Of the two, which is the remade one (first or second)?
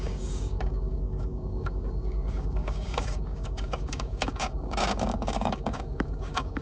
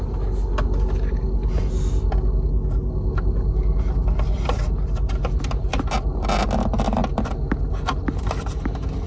first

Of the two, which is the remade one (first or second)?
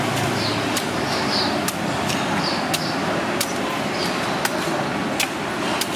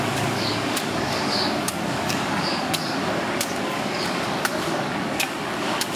second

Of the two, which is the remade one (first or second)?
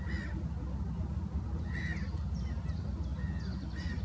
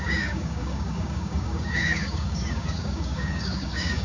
second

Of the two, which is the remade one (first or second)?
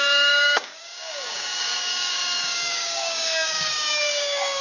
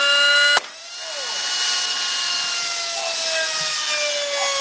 first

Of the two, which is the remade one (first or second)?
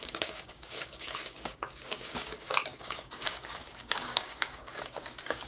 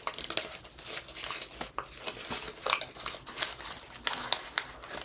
first